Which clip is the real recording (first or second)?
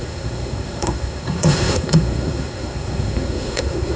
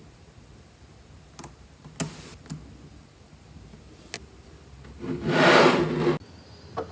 second